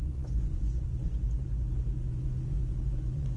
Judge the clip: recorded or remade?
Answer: remade